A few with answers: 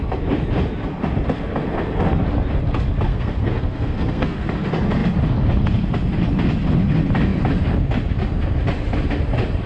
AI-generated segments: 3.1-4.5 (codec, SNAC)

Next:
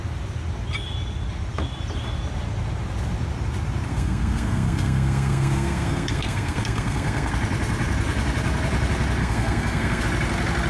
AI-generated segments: 3.9-7.3 (codec, SNAC); 9.2-10.0

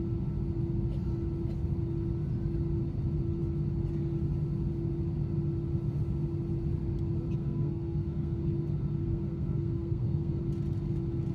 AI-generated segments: 7.4-8.4 (codec, SNAC); 9.0-10.4

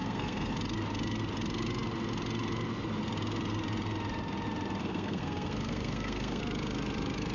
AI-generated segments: 0.0-0.5 (codec, SNAC); 4.8-6.4

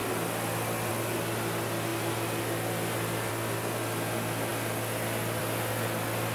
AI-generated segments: none

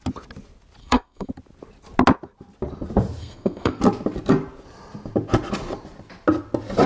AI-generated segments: 0.8-1.3 (codec, SNAC); 3.2-3.8